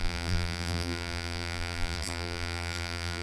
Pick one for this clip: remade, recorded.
remade